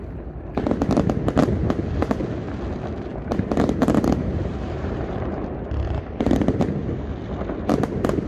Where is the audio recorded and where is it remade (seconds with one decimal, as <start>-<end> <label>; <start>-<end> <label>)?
0.0-3.1 recorded; 3.1-6.6 remade; 6.6-8.3 recorded